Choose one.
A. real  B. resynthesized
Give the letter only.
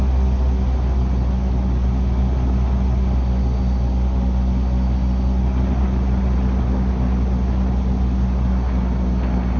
A